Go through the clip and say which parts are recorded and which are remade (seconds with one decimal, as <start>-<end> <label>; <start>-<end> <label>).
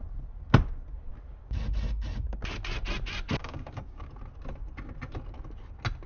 0.0-3.4 recorded; 3.4-4.1 remade; 4.1-6.1 recorded